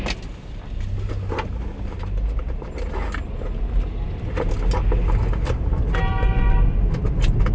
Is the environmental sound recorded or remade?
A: recorded